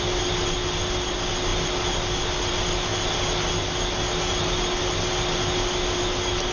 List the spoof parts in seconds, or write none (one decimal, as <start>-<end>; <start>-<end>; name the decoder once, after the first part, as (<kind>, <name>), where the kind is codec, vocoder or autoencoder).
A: none